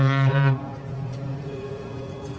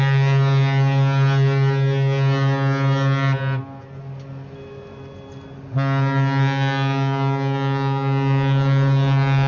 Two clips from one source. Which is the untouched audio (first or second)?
second